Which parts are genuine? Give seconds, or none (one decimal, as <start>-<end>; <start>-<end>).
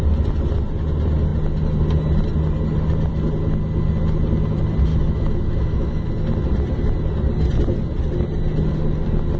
0.0-4.9; 6.1-9.4